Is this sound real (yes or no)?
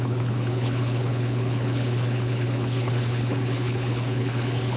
no